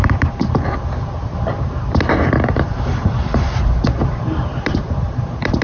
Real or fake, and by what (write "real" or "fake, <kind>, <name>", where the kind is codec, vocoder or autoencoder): fake, vocoder, BigVGAN v2